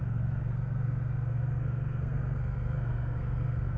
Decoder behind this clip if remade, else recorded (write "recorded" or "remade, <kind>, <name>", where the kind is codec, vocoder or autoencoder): remade, codec, SNAC